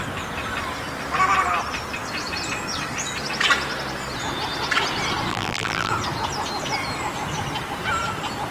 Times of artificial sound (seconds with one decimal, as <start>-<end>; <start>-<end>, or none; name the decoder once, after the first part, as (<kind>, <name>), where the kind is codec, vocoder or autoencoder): 5.3-5.9 (vocoder, BigVGAN v2)